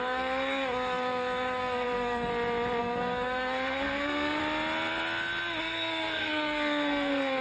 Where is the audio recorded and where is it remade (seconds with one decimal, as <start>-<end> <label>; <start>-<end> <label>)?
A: 0.0-2.3 remade; 2.3-2.8 recorded; 2.8-4.4 remade; 4.4-5.6 recorded; 5.6-7.4 remade